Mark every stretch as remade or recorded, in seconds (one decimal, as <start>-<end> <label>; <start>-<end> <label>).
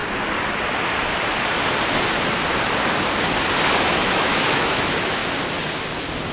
0.0-3.8 recorded; 3.8-5.2 remade; 5.2-6.3 recorded